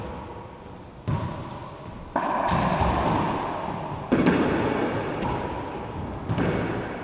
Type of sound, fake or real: real